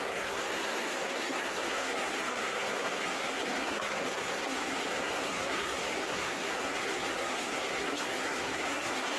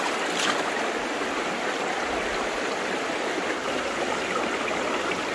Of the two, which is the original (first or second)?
second